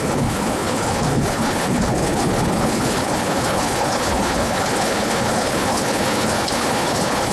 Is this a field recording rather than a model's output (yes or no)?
no